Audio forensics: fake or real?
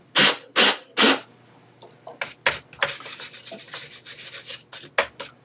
real